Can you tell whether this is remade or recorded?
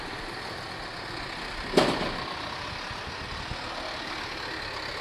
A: recorded